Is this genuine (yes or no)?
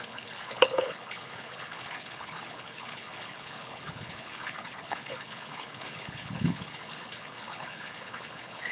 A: no